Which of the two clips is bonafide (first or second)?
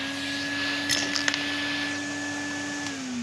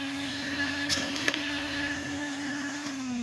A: first